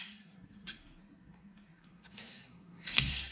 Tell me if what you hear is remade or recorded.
remade